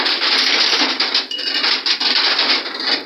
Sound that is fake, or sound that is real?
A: real